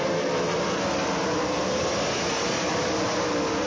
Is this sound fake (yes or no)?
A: no